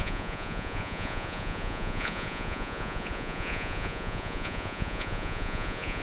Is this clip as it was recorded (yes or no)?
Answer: no